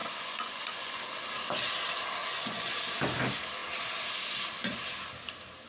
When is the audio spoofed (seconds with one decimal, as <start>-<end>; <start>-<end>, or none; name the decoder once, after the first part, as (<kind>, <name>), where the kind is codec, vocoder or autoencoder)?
0.0-1.0 (vocoder, Vocos); 2.2-2.8